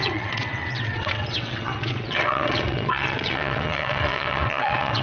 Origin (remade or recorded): remade